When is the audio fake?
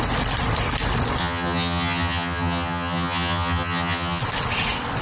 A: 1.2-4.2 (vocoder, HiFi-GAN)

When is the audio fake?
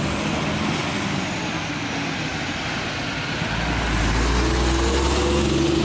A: none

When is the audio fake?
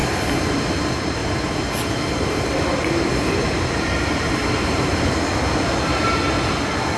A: 1.2-5.2 (vocoder, BigVGAN v2)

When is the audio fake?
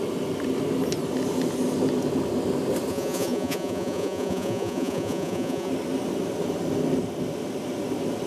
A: 2.9-5.7 (vocoder, Vocos)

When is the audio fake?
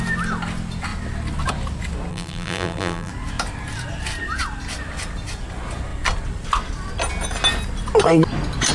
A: 2.1-3.1 (vocoder, BigVGAN v2)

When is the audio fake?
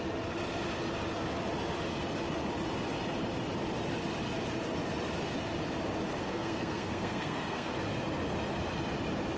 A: 6.2-7.7 (codec, SNAC)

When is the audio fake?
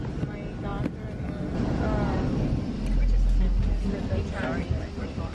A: none